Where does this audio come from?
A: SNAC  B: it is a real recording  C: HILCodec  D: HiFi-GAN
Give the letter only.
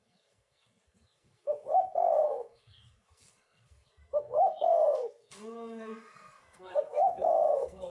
A